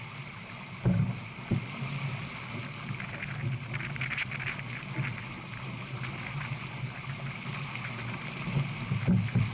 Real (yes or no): yes